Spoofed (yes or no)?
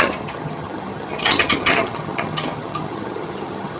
yes